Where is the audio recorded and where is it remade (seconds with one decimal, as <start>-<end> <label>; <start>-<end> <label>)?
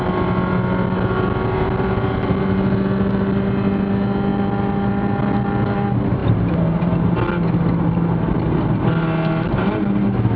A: 0.0-10.4 recorded